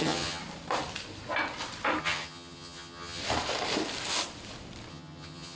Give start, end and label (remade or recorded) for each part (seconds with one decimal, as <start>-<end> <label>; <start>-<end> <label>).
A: 0.0-0.4 remade; 0.4-2.0 recorded; 2.0-3.2 remade; 3.2-4.9 recorded; 4.9-5.6 remade